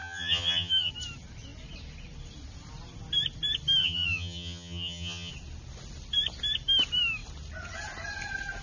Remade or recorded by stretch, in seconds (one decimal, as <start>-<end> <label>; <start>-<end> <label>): 0.0-0.9 remade; 0.9-3.8 recorded; 3.8-5.3 remade; 5.3-8.6 recorded